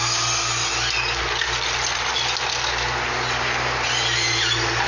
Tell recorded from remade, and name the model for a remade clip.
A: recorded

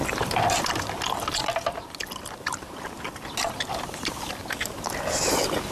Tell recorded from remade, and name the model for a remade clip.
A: recorded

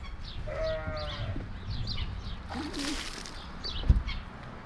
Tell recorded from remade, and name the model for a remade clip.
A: recorded